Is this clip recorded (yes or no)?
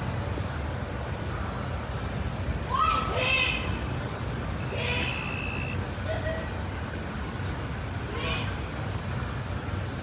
yes